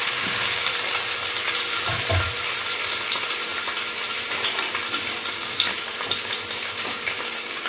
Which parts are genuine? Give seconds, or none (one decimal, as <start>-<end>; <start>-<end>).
0.7-5.3; 5.7-6.6